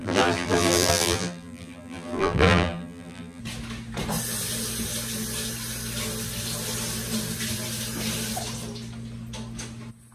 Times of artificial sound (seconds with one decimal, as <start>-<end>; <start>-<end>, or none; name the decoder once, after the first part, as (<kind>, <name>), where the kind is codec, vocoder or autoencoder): 0.0-3.4 (vocoder, BigVGAN v2)